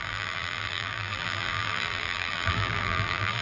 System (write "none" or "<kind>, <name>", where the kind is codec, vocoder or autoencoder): vocoder, BigVGAN v2